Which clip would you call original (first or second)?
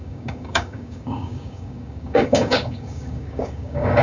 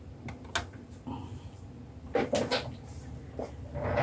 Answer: second